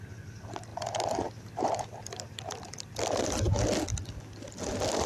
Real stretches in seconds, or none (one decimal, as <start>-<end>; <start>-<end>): 0.0-5.1